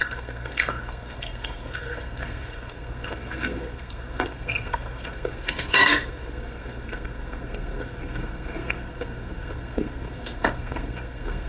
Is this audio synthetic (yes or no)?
yes